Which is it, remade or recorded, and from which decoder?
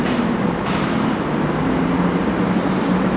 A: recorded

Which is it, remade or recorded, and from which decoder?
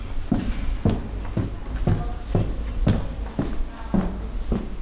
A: recorded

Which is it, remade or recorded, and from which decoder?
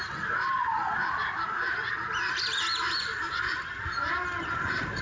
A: recorded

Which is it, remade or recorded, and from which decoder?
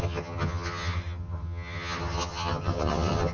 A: remade, vocoder, HiFi-GAN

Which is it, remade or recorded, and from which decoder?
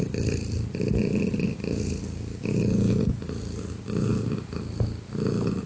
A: recorded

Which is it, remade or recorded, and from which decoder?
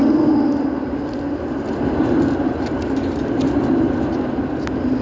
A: recorded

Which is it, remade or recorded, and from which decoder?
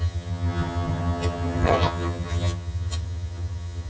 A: remade, vocoder, HiFi-GAN